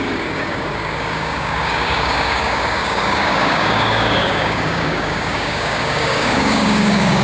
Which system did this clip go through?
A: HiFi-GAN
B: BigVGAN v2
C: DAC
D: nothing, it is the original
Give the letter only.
C